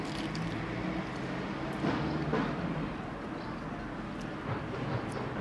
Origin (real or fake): real